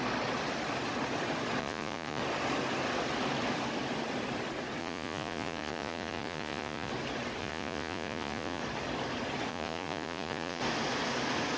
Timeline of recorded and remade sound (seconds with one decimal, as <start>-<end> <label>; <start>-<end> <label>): 0.0-1.6 recorded; 1.6-2.2 remade; 2.2-4.8 recorded; 4.8-6.9 remade; 6.9-7.4 recorded; 7.4-8.6 remade; 8.6-9.5 recorded; 9.5-10.6 remade; 10.6-11.6 recorded